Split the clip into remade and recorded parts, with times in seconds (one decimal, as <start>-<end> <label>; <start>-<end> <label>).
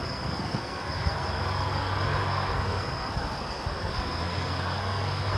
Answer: 0.0-5.4 remade